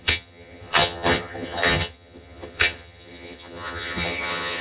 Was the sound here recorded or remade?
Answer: remade